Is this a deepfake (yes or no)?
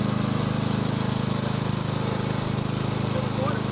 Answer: no